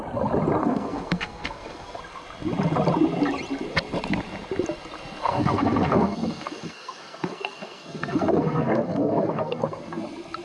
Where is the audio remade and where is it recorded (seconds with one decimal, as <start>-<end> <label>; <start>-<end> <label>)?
0.0-0.6 recorded; 0.6-2.0 remade; 2.0-5.2 recorded; 5.2-10.0 remade; 10.0-10.4 recorded